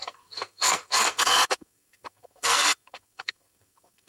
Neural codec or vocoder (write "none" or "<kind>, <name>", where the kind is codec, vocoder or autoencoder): codec, SNAC